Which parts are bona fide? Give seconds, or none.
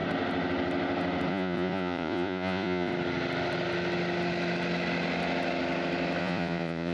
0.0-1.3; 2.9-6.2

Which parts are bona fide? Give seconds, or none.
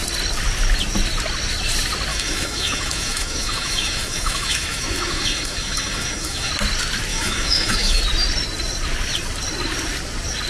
0.0-2.1; 6.5-7.1; 8.0-10.5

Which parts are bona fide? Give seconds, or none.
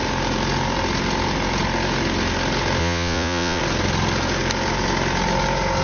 0.0-2.8; 3.6-5.8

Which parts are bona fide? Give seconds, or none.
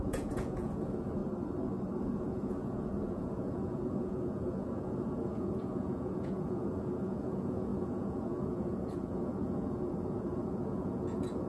1.2-2.0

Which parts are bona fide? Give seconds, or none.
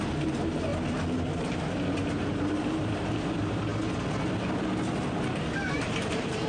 0.7-1.5; 3.7-5.5